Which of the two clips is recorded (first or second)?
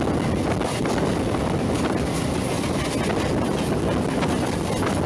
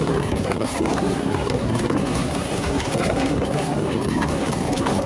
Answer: first